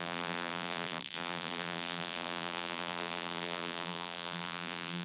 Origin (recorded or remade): remade